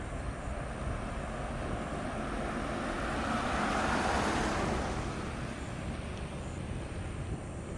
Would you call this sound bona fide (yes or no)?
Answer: yes